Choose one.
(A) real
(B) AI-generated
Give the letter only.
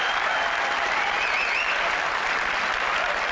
B